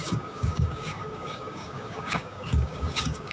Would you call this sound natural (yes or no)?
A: no